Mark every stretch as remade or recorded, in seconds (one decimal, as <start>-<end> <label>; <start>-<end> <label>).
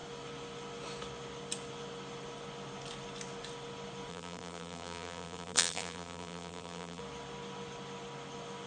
0.0-4.1 recorded; 4.1-7.0 remade; 7.0-8.7 recorded